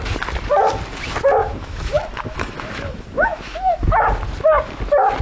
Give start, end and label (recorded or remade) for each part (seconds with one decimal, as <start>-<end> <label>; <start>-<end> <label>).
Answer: 0.0-1.4 recorded; 1.4-4.0 remade; 4.0-5.2 recorded